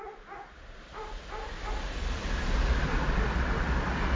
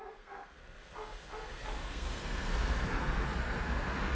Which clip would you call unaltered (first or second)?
first